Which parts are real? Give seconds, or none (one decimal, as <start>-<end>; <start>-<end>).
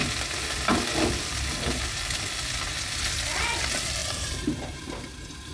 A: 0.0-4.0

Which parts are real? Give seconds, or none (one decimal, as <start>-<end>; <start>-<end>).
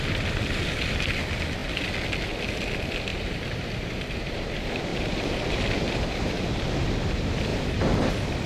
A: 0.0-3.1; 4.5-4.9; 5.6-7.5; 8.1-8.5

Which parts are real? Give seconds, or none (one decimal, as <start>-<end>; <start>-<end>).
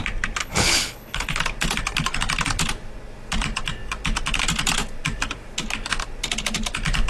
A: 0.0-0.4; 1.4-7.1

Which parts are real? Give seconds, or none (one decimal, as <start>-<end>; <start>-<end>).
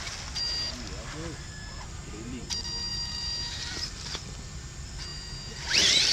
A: 0.0-2.9; 3.7-6.1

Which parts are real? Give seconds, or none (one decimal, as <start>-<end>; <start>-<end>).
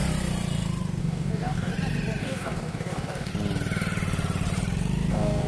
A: 0.0-1.0; 1.7-2.2; 3.3-5.1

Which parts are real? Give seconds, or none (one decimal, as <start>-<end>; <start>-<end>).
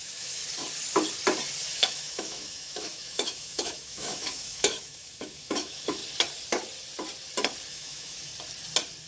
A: 0.4-1.7; 6.0-7.7; 8.3-9.1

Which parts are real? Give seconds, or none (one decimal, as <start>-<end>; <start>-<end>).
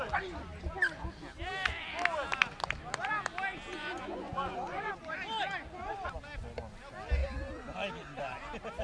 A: 0.0-3.8; 4.9-8.8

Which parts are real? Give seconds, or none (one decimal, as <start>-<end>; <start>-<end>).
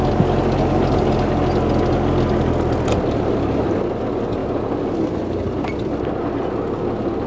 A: 0.0-7.3